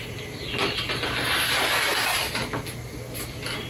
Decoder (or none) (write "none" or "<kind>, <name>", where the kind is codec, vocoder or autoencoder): none